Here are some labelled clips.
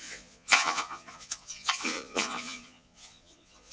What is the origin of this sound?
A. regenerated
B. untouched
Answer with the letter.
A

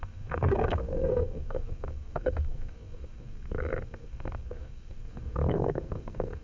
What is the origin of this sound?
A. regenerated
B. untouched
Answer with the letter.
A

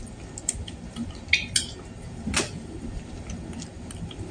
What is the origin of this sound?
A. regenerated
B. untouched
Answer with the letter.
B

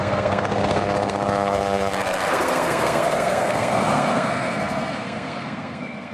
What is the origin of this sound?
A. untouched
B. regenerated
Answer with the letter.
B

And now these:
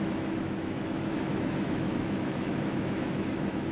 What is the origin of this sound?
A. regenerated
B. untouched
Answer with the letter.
A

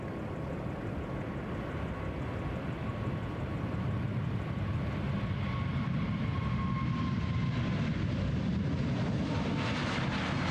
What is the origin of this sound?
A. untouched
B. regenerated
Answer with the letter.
A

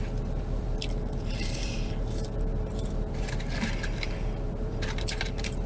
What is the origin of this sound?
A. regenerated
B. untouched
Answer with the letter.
A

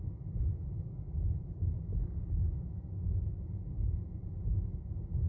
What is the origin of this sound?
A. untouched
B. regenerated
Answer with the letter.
A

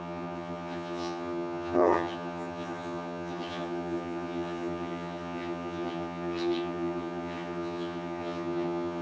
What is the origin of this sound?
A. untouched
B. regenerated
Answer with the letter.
B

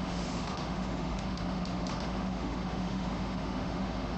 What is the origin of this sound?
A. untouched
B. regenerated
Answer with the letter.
B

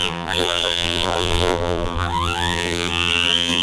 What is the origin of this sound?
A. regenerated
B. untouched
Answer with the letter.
A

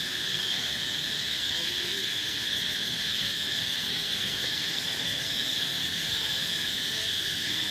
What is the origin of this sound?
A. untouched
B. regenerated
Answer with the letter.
B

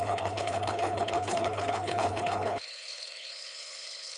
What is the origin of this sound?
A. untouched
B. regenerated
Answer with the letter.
B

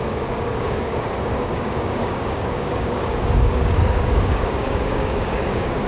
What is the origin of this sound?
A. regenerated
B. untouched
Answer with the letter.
A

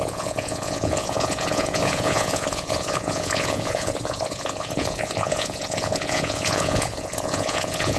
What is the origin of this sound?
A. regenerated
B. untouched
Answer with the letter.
A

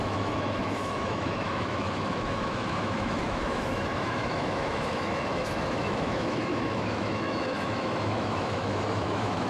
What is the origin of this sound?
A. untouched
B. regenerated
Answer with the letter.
B